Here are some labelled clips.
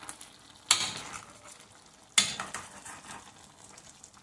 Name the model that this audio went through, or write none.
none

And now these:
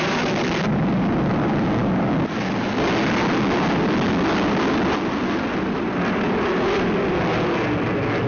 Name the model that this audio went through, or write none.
none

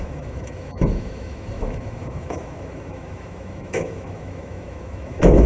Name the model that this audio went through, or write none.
autoencoder, DAC-VAE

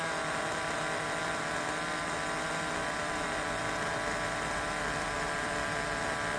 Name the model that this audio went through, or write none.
none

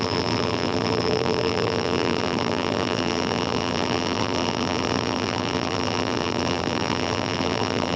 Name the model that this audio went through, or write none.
vocoder, BigVGAN v2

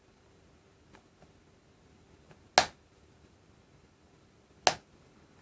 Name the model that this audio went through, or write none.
none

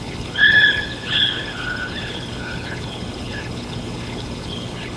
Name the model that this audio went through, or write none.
codec, HILCodec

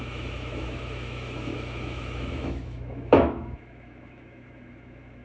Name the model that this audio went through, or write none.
autoencoder, DAC-VAE